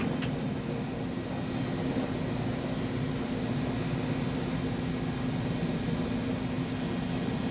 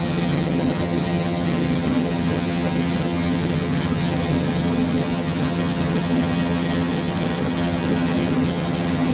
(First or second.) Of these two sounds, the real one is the first